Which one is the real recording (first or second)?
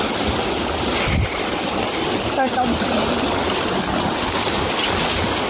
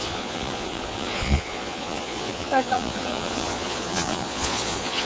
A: first